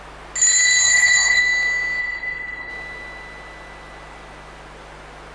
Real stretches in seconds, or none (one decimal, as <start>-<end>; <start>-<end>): 0.0-0.8; 1.4-2.0; 2.7-5.3